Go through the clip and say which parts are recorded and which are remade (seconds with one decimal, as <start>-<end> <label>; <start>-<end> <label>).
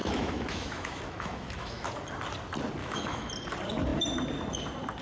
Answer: 0.0-1.9 remade; 1.9-2.8 recorded; 2.8-3.3 remade; 3.3-5.0 recorded